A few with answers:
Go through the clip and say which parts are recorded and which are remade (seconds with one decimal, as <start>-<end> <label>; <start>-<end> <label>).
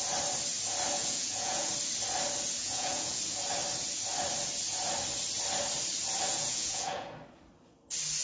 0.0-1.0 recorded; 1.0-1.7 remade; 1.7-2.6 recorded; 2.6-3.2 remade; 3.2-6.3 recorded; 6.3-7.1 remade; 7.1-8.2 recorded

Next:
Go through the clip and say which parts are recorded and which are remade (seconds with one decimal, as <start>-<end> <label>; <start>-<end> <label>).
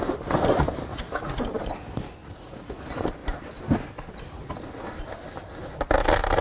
0.0-0.9 recorded; 0.9-1.5 remade; 1.5-2.2 recorded; 2.2-2.8 remade; 2.8-6.4 recorded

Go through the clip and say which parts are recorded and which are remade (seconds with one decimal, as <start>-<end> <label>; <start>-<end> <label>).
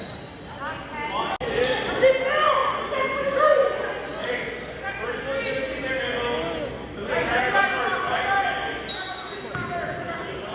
0.0-10.5 recorded